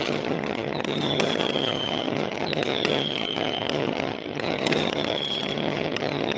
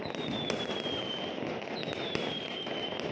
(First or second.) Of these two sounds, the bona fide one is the second